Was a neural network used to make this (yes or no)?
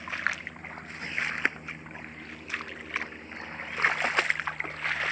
no